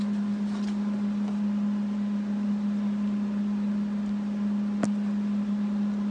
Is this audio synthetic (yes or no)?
no